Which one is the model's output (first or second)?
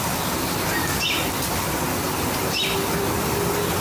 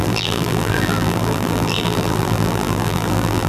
second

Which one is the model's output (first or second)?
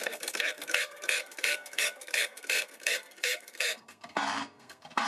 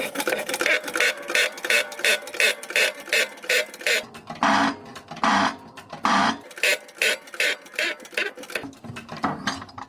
first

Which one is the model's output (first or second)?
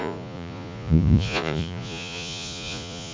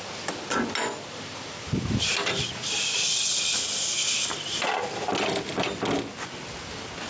first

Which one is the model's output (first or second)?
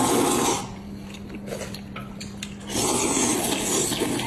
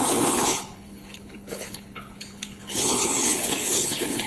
second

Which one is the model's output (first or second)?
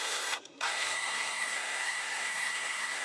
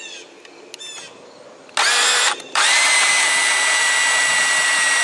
first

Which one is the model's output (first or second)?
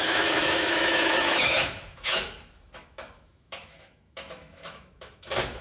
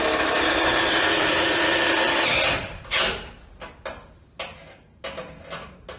first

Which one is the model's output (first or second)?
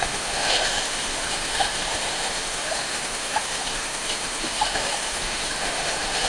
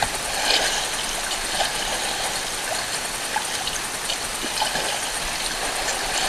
first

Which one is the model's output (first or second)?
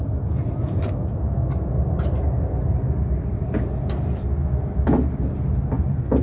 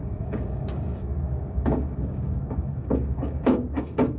second